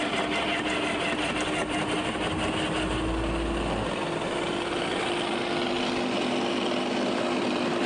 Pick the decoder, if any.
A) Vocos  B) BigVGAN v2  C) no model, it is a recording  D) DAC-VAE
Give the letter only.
C